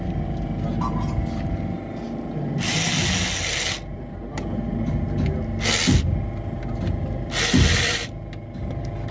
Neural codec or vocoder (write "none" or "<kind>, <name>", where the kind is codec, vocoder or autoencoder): none